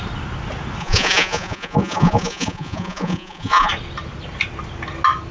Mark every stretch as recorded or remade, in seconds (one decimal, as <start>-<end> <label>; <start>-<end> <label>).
0.0-0.8 recorded; 0.8-3.7 remade; 3.7-5.3 recorded